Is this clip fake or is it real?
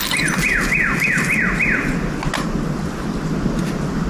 real